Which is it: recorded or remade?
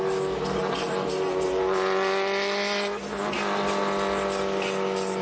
recorded